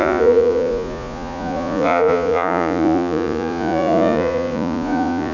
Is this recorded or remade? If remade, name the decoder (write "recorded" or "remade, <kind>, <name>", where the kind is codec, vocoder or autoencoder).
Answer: remade, vocoder, Vocos